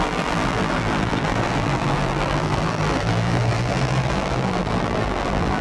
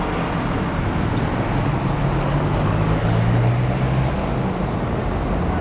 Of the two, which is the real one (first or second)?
second